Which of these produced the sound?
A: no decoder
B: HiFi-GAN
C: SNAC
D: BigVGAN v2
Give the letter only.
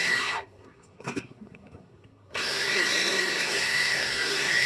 C